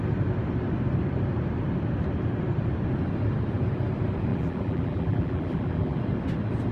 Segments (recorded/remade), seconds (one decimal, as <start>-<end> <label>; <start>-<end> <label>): 0.0-4.3 recorded; 4.3-6.0 remade; 6.0-6.7 recorded